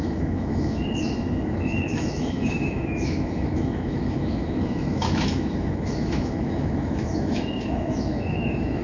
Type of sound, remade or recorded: remade